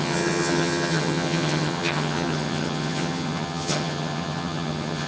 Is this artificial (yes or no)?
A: yes